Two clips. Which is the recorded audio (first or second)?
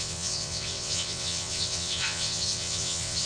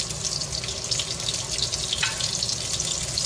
second